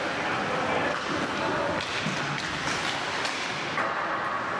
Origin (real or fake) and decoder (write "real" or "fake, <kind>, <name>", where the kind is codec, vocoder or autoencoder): real